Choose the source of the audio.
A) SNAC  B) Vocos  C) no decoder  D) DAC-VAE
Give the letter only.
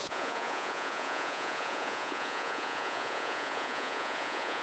B